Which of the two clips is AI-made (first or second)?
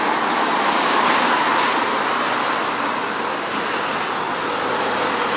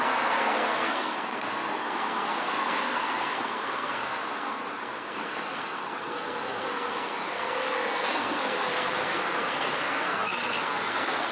second